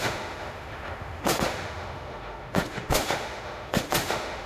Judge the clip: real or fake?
fake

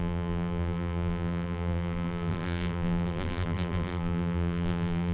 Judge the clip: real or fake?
fake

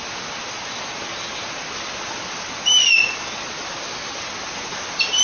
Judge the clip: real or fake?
real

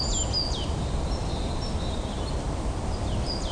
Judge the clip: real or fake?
real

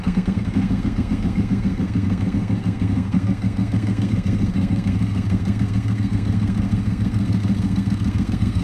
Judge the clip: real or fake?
fake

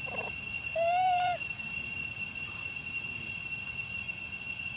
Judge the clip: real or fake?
fake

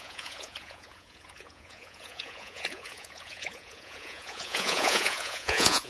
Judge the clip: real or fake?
fake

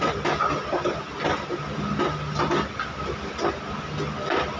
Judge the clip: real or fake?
real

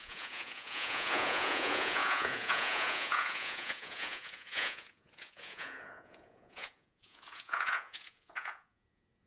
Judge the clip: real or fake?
fake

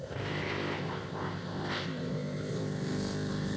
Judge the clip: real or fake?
fake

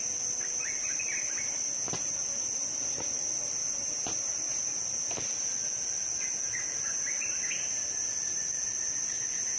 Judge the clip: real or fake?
real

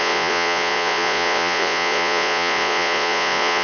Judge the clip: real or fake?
fake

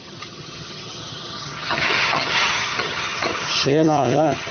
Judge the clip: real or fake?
fake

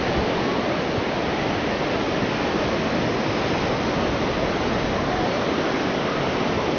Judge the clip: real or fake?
real